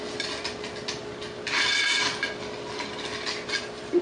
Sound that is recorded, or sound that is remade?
recorded